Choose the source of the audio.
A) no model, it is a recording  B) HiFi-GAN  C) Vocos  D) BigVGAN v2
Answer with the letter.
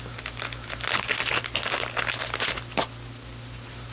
A